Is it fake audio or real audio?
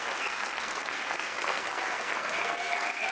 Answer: fake